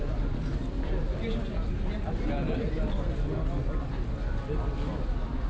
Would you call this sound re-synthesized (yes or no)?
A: no